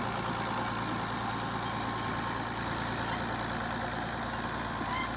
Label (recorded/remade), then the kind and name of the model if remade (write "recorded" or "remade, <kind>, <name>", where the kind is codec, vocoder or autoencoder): recorded